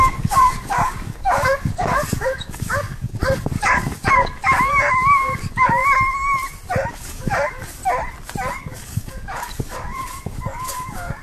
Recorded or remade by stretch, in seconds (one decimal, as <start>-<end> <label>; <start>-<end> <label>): 0.0-5.8 remade; 5.8-6.9 recorded; 6.9-7.8 remade; 7.8-8.5 recorded; 8.5-11.2 remade